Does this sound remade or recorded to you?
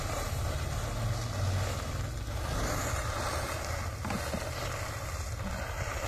recorded